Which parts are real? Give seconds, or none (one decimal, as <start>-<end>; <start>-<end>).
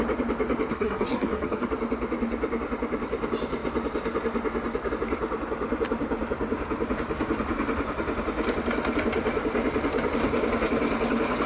0.0-0.7; 1.7-11.5